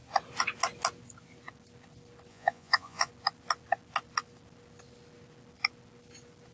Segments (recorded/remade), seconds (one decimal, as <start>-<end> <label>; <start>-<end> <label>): 0.0-2.3 recorded; 2.3-3.1 remade; 3.1-6.5 recorded